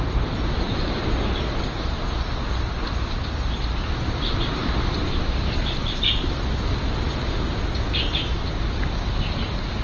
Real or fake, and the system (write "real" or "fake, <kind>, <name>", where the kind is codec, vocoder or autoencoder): real